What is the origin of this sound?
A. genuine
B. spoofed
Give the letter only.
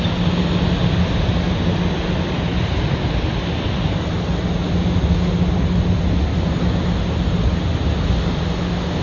A